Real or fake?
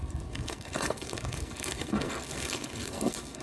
fake